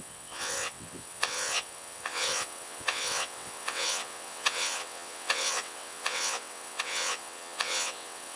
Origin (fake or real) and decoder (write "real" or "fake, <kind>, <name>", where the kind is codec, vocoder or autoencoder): fake, vocoder, WaveNeXt